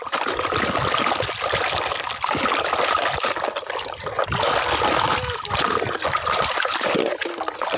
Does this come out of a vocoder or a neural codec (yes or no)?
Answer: no